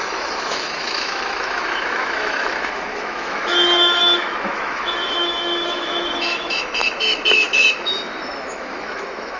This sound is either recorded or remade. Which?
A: remade